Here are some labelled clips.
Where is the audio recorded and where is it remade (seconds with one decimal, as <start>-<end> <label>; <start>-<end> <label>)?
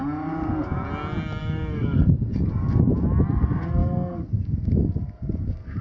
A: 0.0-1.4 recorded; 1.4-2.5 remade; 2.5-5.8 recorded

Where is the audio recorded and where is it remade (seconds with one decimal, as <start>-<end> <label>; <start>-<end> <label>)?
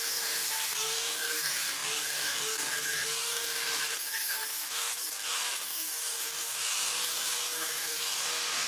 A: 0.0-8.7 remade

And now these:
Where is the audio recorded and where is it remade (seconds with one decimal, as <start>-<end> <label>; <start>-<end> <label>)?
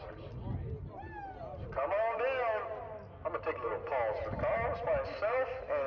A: 0.0-5.9 recorded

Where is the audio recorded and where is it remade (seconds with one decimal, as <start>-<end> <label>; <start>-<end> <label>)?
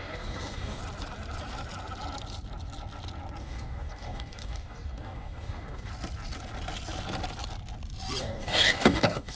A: 0.0-0.8 remade; 0.8-3.4 recorded; 3.4-5.9 remade; 5.9-8.2 recorded; 8.2-9.3 remade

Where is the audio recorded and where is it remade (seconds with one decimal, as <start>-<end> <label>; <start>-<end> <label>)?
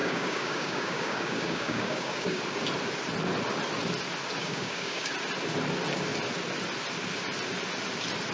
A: 0.0-2.4 remade; 2.4-4.4 recorded; 4.4-5.1 remade; 5.1-8.3 recorded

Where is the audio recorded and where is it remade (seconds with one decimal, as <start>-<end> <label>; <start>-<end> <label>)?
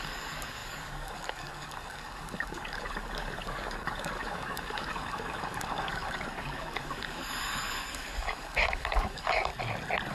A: 0.0-9.5 remade; 9.5-10.1 recorded